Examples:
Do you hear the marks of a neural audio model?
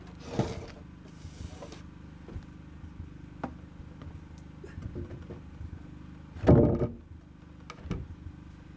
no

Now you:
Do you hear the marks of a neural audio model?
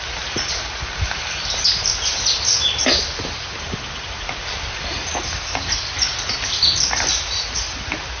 no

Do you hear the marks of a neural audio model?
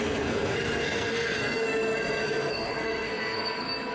yes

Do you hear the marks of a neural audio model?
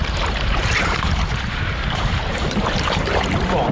yes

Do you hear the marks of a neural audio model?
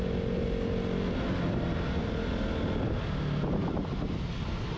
no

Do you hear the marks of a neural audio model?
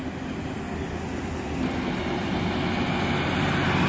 no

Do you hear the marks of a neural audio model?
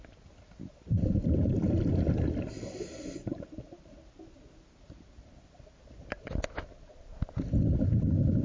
no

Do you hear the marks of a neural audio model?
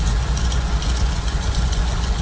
yes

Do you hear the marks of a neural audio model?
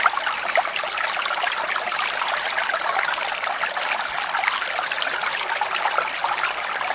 no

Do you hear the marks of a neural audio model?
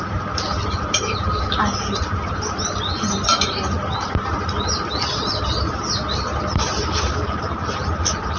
no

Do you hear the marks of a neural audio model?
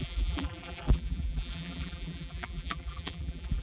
yes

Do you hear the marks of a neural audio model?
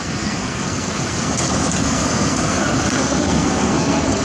yes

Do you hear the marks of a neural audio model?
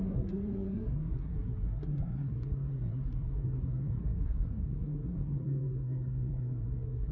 yes